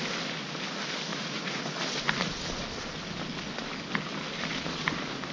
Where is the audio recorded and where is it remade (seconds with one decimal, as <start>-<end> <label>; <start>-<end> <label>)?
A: 0.0-1.1 recorded; 1.1-1.6 remade; 1.6-5.3 recorded